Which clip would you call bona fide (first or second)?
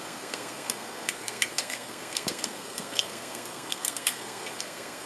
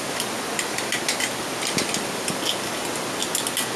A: second